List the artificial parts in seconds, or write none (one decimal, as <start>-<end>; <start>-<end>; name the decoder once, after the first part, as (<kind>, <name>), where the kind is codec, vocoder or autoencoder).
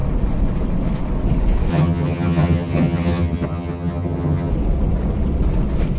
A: 1.7-4.5 (vocoder, HiFi-GAN)